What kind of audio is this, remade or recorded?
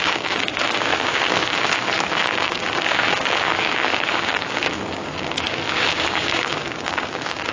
remade